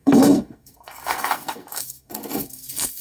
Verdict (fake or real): fake